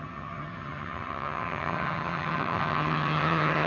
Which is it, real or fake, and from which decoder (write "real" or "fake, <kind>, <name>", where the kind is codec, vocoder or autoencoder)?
fake, vocoder, HiFi-GAN